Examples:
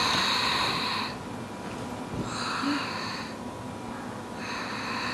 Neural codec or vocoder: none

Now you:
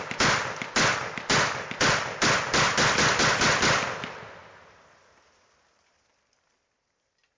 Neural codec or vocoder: none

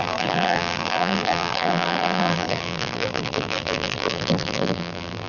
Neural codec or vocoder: vocoder, BigVGAN v2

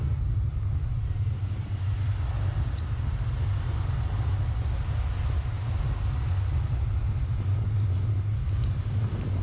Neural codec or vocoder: none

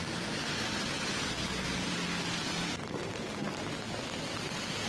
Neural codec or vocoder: none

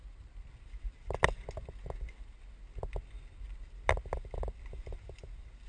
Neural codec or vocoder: none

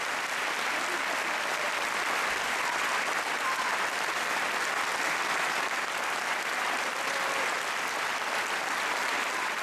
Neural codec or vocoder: vocoder, BigVGAN v2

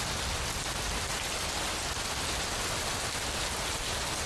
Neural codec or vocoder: none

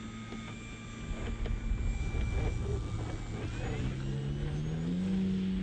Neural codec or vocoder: none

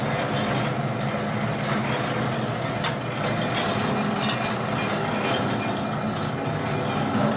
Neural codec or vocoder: none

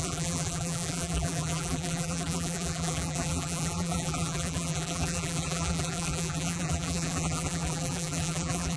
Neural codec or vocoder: vocoder, BigVGAN v2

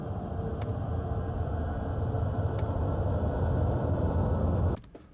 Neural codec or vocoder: none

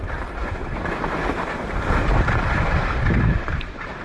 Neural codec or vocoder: vocoder, BigVGAN v2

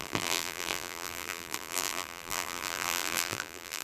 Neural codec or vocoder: vocoder, BigVGAN v2